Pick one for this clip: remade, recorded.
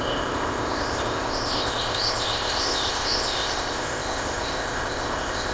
remade